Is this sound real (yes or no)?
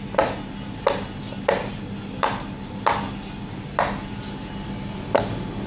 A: yes